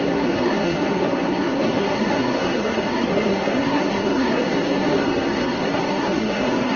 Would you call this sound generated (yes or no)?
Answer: yes